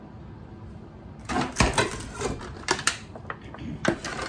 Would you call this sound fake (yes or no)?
no